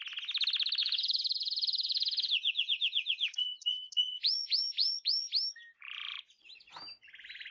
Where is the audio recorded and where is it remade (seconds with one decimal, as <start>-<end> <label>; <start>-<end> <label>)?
0.0-0.8 recorded; 0.8-5.3 remade; 5.3-7.5 recorded